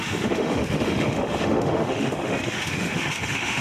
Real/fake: fake